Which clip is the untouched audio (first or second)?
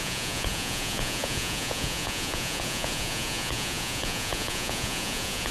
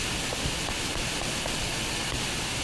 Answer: second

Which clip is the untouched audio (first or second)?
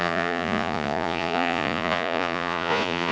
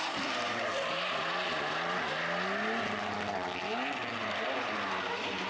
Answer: second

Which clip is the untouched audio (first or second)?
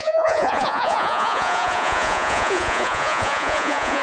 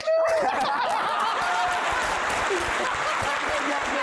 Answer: second